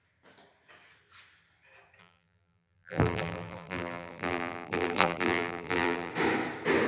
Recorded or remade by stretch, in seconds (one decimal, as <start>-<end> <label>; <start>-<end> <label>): 0.0-2.0 recorded; 2.0-6.1 remade; 6.1-6.9 recorded